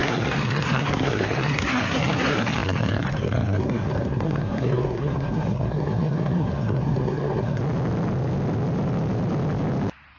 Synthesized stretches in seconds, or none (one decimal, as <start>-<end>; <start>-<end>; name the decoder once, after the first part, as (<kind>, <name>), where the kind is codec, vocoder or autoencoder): 0.0-7.6 (codec, SNAC)